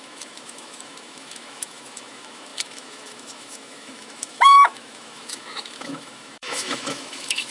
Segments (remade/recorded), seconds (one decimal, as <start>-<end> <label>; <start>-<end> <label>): 0.0-7.5 remade